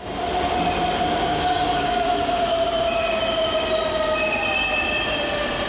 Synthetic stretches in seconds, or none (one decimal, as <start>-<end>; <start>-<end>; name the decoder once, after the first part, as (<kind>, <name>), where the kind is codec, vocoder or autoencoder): 1.3-2.1 (codec, DAC)